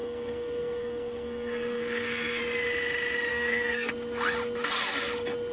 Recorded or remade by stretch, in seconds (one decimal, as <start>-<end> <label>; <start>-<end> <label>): 0.0-2.4 remade; 2.4-3.3 recorded; 3.3-3.9 remade; 3.9-5.5 recorded